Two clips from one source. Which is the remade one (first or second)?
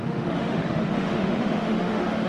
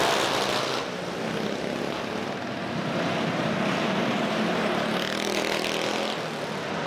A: first